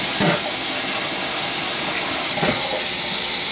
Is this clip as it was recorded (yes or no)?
yes